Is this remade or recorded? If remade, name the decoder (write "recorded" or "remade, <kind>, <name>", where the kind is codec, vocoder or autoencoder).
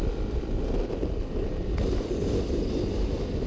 recorded